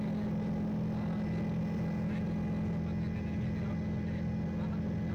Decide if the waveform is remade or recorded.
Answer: recorded